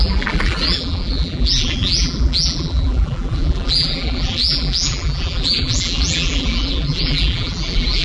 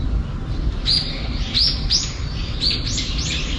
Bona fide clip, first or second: second